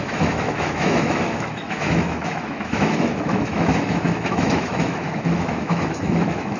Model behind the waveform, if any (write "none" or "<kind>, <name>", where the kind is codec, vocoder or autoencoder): autoencoder, DAC-VAE